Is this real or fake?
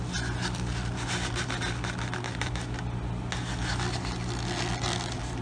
real